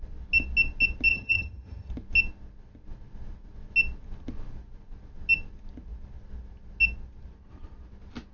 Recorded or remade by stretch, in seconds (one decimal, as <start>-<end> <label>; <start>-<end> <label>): 0.0-1.1 recorded; 1.1-1.9 remade; 1.9-8.3 recorded